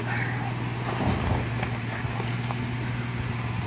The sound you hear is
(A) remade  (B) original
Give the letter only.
B